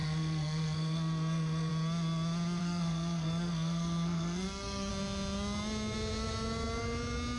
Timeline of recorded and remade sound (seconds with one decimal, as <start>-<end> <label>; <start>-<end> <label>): 0.0-1.7 remade; 1.7-2.6 recorded; 2.6-4.9 remade; 4.9-7.4 recorded